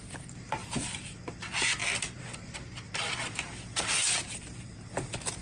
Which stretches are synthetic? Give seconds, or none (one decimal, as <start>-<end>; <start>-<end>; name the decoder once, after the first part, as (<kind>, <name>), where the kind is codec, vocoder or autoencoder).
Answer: 0.6-1.1 (vocoder, BigVGAN v2)